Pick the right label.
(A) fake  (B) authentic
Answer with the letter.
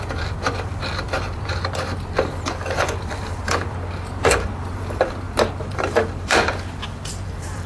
A